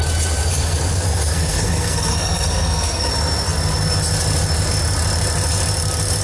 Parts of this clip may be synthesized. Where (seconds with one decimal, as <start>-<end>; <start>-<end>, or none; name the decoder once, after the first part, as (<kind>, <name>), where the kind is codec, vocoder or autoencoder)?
0.5-3.1 (codec, SNAC)